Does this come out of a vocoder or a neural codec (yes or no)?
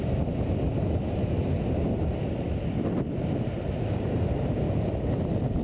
no